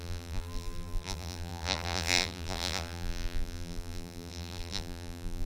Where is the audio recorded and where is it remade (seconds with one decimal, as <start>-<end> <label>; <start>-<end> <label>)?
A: 0.0-5.4 remade